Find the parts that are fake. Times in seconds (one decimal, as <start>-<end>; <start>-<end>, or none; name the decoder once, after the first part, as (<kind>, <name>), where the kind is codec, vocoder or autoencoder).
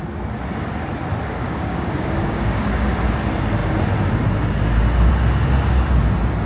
1.4-2.9 (codec, DAC)